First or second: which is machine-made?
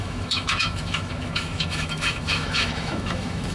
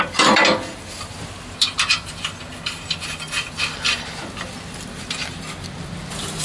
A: first